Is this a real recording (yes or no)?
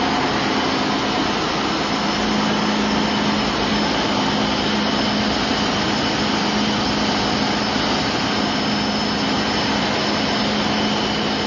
yes